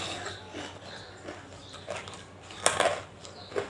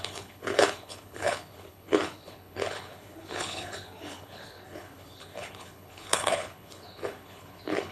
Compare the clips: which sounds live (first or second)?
first